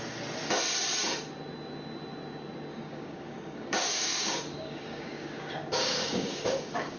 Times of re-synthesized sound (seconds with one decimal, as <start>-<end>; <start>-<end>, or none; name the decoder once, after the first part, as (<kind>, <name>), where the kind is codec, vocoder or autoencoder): 2.7-7.0 (codec, DAC)